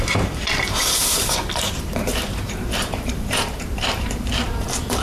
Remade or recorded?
remade